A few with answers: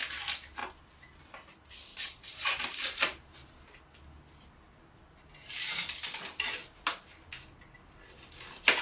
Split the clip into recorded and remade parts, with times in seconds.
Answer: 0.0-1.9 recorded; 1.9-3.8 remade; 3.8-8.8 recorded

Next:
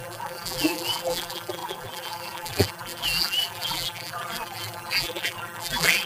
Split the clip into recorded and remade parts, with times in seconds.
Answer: 0.0-6.1 remade

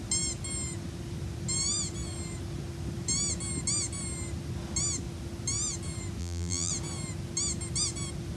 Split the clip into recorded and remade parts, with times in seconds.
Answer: 0.0-6.2 recorded; 6.2-6.7 remade; 6.7-8.4 recorded

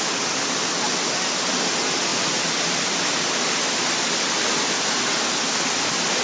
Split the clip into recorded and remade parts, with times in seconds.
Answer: 0.0-6.2 recorded

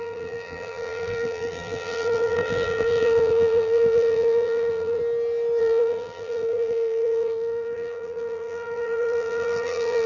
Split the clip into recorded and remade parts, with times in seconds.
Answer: 0.0-5.0 remade; 5.0-5.6 recorded; 5.6-10.1 remade

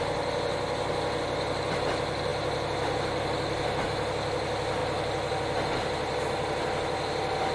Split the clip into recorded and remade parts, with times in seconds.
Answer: 0.0-7.5 recorded

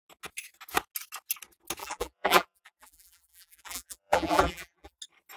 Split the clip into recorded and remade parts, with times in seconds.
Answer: 0.0-1.8 recorded; 1.8-5.0 remade; 5.0-5.4 recorded

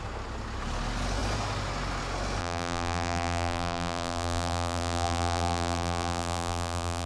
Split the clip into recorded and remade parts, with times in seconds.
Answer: 0.0-2.4 recorded; 2.4-7.1 remade